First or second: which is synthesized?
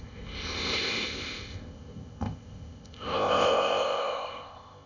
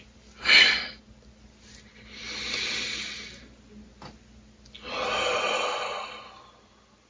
first